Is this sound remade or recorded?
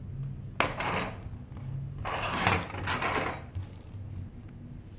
recorded